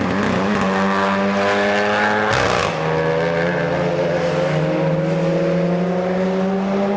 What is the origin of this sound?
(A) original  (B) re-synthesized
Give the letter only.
A